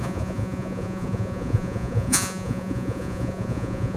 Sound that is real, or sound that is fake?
fake